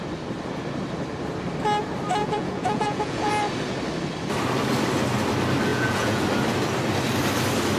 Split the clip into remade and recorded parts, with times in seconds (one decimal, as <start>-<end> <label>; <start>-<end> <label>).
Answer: 0.0-2.2 recorded; 2.2-3.3 remade; 3.3-5.7 recorded; 5.7-6.2 remade; 6.2-7.8 recorded